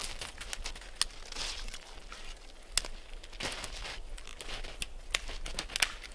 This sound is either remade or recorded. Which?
recorded